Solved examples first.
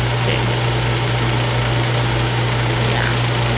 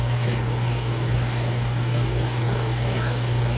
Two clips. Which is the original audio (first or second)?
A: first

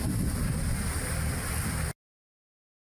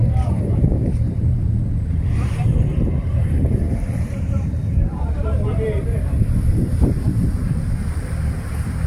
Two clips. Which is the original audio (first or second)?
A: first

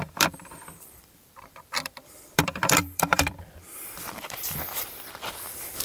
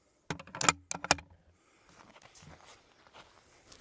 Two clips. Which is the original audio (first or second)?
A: second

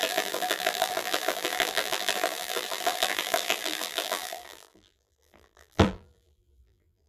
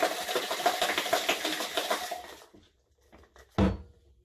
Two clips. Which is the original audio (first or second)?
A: second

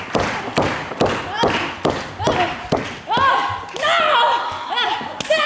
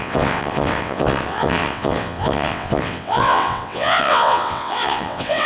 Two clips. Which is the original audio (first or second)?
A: first